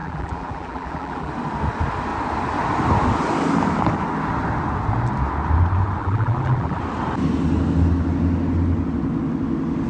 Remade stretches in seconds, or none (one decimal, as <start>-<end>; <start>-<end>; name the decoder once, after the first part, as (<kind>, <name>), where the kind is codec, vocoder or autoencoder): 0.0-1.3 (vocoder, BigVGAN v2); 6.0-6.8